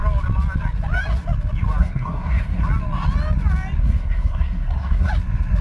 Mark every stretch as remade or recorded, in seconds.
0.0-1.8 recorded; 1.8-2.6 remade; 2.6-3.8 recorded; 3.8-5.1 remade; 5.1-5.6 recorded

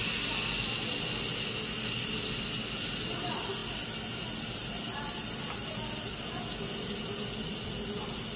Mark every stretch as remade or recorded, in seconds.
0.0-8.4 recorded